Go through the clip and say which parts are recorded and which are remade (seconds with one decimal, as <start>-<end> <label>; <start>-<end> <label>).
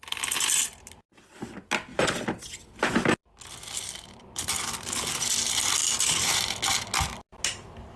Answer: 0.0-8.0 recorded